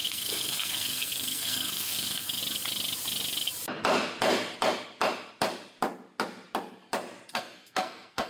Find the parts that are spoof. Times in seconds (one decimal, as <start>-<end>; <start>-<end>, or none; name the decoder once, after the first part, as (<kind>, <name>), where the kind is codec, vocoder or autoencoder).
0.0-2.4 (codec, SNAC); 7.3-8.3